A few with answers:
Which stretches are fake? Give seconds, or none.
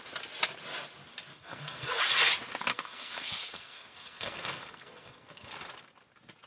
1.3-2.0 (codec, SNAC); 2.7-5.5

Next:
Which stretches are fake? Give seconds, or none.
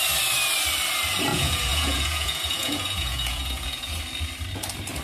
1.3-4.0 (vocoder, Vocos)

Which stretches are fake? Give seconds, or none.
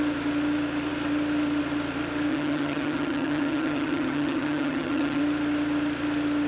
2.3-5.2 (vocoder, HiFi-GAN)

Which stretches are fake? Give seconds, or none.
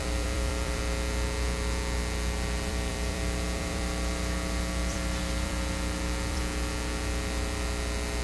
0.0-0.8 (vocoder, BigVGAN v2); 2.7-6.4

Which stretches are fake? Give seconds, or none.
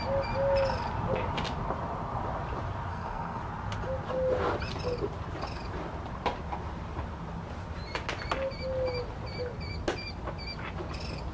2.9-3.4 (codec, SNAC)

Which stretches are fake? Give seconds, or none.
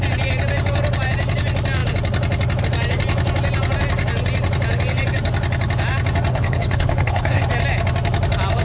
6.3-7.4 (codec, HILCodec)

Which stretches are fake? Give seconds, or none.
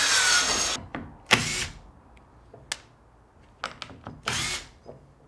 none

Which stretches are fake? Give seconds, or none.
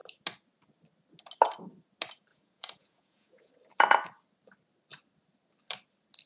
2.3-3.5 (vocoder, Vocos)